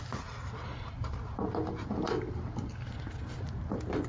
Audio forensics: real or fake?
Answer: real